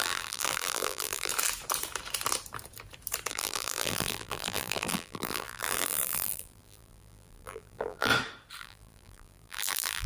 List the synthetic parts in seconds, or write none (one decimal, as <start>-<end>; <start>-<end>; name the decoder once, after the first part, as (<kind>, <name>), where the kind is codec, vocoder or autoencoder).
0.0-1.3 (vocoder, BigVGAN v2); 3.3-8.1; 8.6-10.1